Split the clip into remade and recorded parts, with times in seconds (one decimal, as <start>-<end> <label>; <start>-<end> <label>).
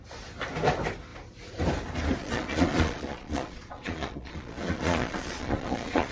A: 0.0-2.2 recorded; 2.2-6.1 remade